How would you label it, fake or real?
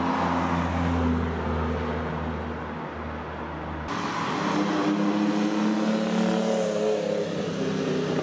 real